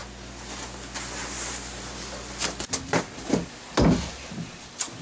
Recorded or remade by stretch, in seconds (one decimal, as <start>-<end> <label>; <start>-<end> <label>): 0.0-5.0 recorded

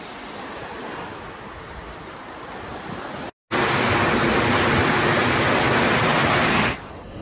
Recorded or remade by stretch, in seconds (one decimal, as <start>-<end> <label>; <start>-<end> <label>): 0.0-7.2 recorded